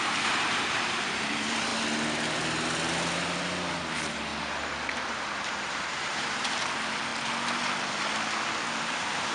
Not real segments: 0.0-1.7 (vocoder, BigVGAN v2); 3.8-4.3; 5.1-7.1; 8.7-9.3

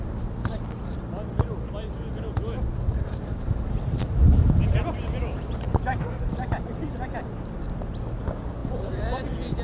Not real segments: 3.0-6.9 (vocoder, BigVGAN v2); 8.6-9.2

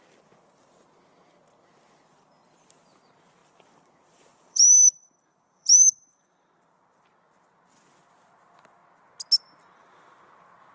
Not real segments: 3.4-7.0 (vocoder, BigVGAN v2)

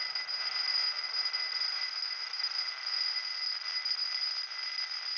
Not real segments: 2.3-4.2 (vocoder, BigVGAN v2)